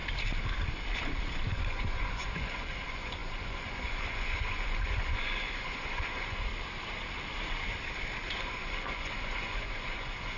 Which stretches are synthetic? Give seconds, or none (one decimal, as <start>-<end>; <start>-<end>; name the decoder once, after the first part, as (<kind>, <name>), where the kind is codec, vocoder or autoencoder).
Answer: 1.5-6.5 (vocoder, Vocos); 8.4-10.4